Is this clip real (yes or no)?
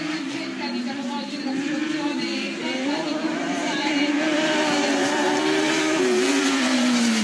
no